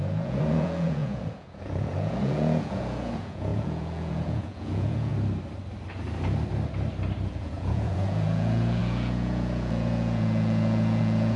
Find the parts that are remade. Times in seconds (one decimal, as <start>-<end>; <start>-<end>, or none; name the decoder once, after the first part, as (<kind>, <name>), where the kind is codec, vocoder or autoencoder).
0.0-5.1 (vocoder, Vocos); 7.3-11.4